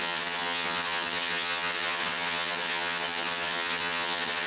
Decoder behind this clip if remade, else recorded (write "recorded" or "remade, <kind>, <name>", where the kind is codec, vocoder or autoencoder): remade, vocoder, HiFi-GAN